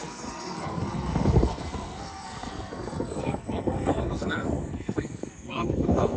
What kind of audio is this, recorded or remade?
remade